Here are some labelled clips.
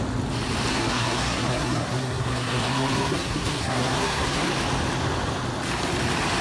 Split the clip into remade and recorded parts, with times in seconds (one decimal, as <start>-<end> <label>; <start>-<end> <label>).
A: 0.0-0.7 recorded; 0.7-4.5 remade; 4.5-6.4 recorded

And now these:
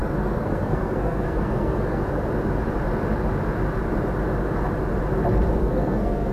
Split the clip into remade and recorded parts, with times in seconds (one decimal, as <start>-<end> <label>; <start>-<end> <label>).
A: 0.0-2.0 remade; 2.0-5.6 recorded; 5.6-6.3 remade

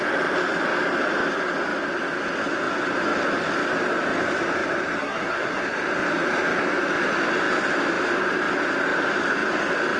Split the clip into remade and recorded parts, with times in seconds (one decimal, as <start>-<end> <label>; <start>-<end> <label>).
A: 0.0-5.0 recorded; 5.0-5.6 remade; 5.6-10.0 recorded

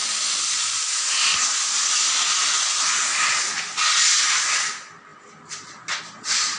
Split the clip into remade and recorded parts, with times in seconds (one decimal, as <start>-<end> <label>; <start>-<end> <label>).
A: 0.0-6.6 recorded